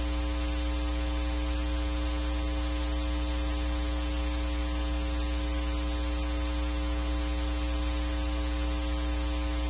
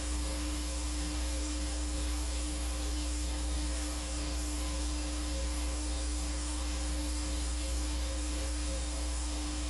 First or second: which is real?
first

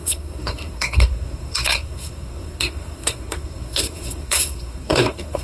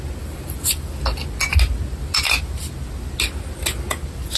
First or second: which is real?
second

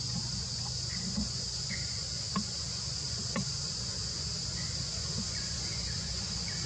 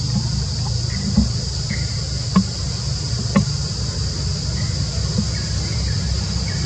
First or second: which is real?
second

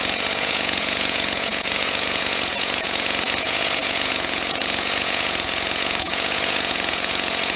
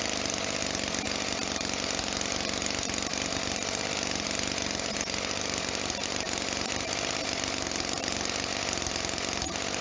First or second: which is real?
second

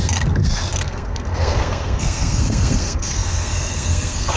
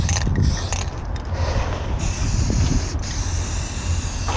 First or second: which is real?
second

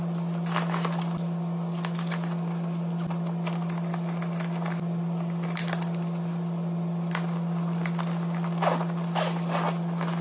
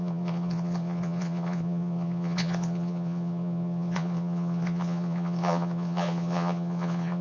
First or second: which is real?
first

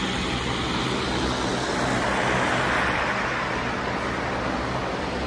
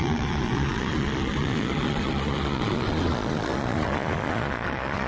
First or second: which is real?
first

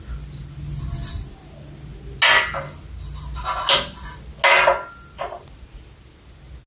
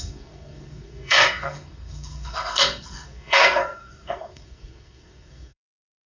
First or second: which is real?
first